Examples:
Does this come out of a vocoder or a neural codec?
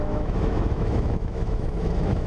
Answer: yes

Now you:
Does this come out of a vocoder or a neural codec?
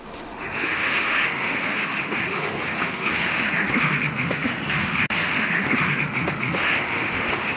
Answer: yes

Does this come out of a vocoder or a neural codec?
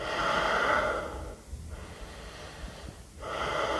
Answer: no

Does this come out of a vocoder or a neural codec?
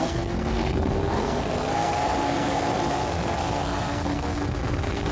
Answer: yes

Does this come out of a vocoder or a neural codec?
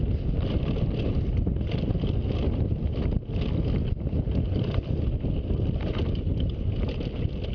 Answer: no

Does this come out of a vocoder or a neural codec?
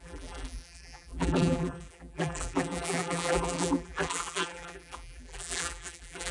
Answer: yes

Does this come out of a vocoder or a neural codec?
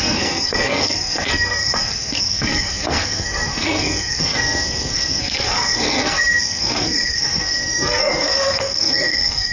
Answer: yes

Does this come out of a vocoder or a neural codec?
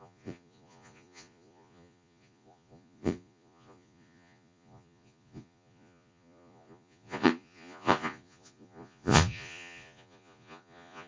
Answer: yes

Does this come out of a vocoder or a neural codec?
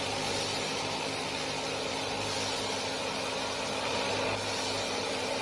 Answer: no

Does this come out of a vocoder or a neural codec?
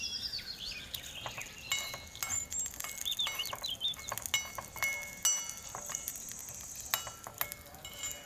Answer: no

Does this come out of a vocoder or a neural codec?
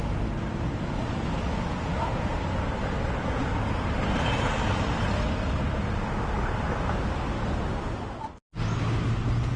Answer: no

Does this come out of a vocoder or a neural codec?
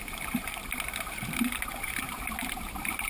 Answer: yes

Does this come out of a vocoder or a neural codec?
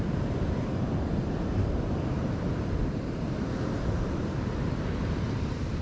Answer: yes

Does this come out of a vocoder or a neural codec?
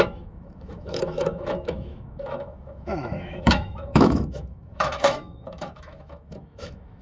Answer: yes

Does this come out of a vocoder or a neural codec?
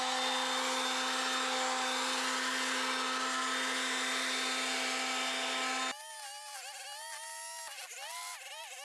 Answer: no